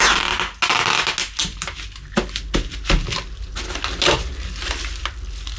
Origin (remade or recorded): recorded